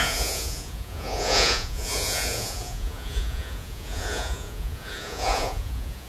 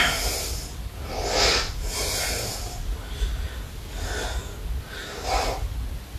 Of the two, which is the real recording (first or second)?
second